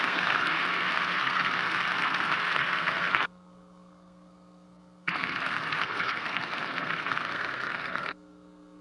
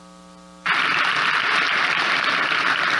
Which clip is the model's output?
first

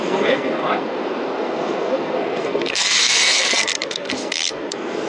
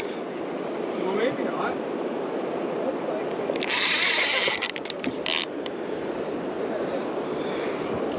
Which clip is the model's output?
first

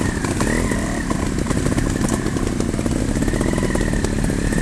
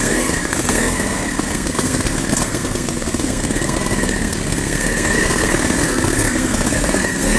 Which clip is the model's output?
second